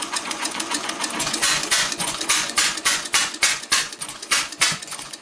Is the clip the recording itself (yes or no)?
no